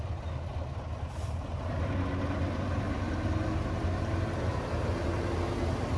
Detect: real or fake real